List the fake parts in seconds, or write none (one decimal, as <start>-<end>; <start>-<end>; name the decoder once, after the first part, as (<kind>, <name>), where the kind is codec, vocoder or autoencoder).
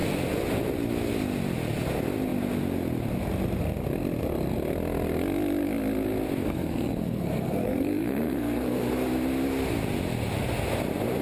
6.4-8.9 (codec, SNAC)